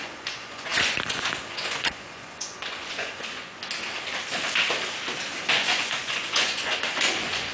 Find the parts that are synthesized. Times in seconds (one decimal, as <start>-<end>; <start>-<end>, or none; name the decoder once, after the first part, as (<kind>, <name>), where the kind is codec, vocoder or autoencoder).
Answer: 0.0-3.6 (vocoder, Vocos); 5.5-7.5